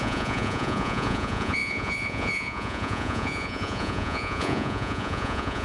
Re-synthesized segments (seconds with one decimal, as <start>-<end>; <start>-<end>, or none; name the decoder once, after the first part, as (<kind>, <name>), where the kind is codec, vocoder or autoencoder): 0.0-5.6 (vocoder, Vocos)